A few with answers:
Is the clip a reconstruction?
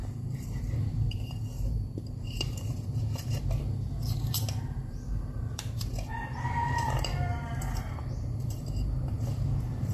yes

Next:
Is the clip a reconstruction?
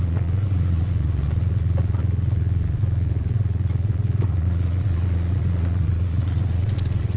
yes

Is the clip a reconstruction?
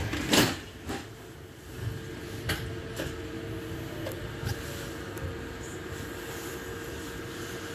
no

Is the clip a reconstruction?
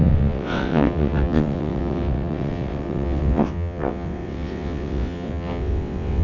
yes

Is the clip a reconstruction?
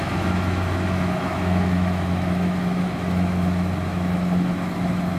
yes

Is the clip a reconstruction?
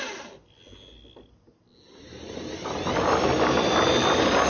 no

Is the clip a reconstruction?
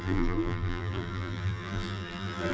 yes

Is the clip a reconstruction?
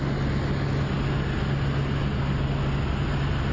no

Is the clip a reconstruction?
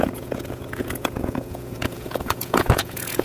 yes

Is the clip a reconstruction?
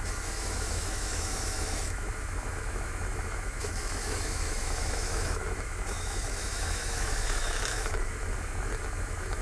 yes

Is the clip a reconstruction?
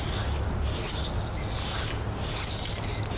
no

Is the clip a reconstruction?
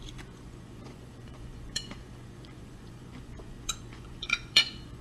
yes